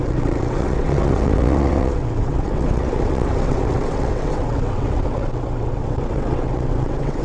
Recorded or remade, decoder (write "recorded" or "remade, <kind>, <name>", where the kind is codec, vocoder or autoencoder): remade, vocoder, WaveNeXt